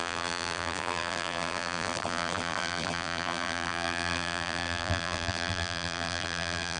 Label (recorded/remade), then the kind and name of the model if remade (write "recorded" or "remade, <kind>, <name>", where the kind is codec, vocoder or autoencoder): remade, vocoder, BigVGAN v2